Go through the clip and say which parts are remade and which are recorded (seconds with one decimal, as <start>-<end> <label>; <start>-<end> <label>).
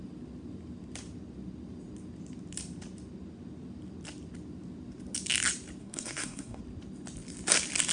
0.0-5.8 recorded; 5.8-6.6 remade; 6.6-7.9 recorded